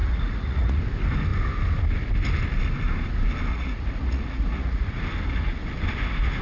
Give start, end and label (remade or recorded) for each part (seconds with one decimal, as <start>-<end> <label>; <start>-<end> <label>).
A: 0.0-0.8 remade; 0.8-3.5 recorded; 3.5-5.0 remade; 5.0-6.4 recorded